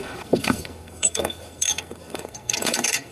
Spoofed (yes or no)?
yes